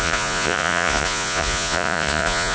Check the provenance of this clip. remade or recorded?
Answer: remade